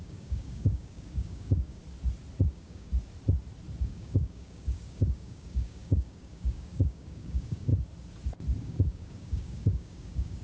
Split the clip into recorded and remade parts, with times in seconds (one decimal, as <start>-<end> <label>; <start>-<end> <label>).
0.0-1.8 remade; 1.8-2.5 recorded; 2.5-2.9 remade; 2.9-3.8 recorded; 3.8-7.7 remade; 7.7-8.6 recorded; 8.6-10.4 remade